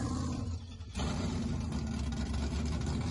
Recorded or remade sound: recorded